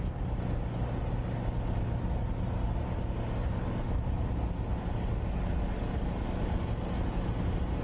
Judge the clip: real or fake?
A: real